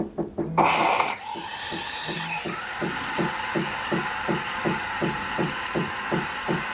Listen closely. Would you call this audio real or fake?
real